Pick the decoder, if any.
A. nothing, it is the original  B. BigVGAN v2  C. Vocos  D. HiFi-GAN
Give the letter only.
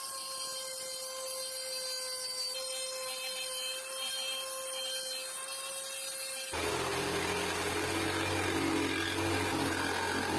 A